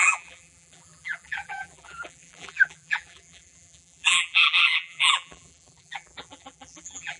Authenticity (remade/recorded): remade